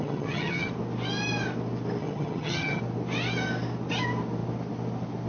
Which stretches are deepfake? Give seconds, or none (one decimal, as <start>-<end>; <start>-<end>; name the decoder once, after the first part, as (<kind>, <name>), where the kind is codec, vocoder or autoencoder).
0.0-0.7 (vocoder, HiFi-GAN); 2.0-2.8